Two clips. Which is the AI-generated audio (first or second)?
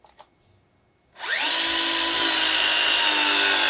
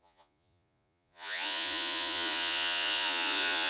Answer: second